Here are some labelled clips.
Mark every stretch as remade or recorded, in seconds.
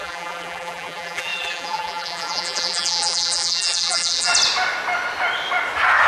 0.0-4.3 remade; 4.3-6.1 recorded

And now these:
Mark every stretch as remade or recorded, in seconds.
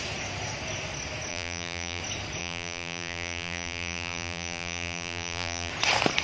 0.0-1.3 recorded; 1.3-2.0 remade; 2.0-2.4 recorded; 2.4-5.7 remade; 5.7-6.2 recorded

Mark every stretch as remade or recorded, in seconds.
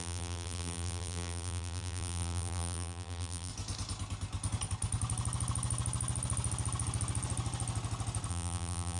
0.0-3.5 remade; 3.5-8.3 recorded; 8.3-9.0 remade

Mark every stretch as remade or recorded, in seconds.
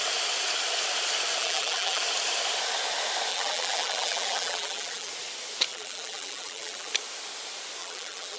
0.0-1.4 recorded; 1.4-2.0 remade; 2.0-3.3 recorded; 3.3-5.1 remade; 5.1-5.7 recorded; 5.7-6.9 remade; 6.9-7.8 recorded; 7.8-8.4 remade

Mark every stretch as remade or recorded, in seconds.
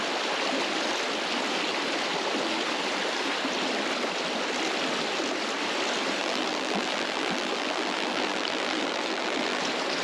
0.0-6.2 recorded; 6.2-9.6 remade; 9.6-10.0 recorded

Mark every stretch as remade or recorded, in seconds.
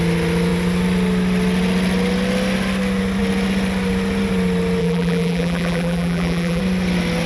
0.0-4.8 recorded; 4.8-6.6 remade; 6.6-7.3 recorded